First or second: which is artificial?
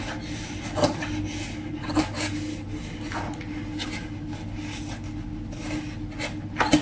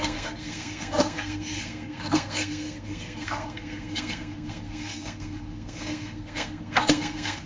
second